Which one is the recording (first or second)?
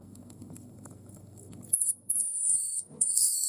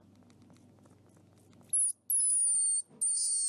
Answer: second